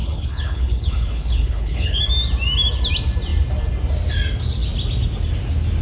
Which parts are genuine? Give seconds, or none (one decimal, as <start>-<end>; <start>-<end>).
2.0-5.8